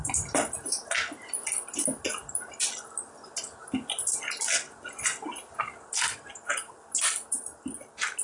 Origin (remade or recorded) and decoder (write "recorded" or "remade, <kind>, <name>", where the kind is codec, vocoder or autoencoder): recorded